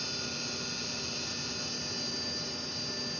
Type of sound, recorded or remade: recorded